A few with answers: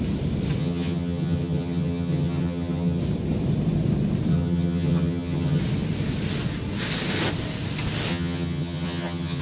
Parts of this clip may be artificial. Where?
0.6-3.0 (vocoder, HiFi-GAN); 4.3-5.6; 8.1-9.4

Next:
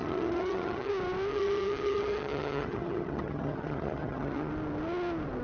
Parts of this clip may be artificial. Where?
0.0-0.9 (vocoder, HiFi-GAN); 1.3-4.5

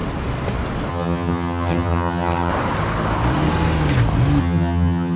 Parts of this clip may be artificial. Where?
0.9-2.5 (vocoder, HiFi-GAN); 4.4-5.2